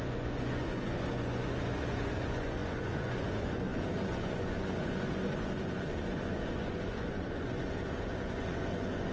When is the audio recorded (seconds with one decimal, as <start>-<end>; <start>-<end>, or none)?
none